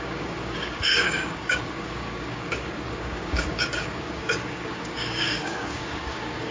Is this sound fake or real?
fake